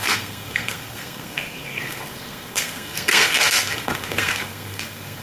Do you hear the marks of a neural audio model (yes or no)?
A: yes